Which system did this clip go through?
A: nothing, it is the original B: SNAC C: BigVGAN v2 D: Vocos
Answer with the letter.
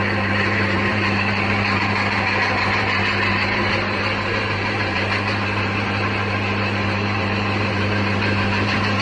C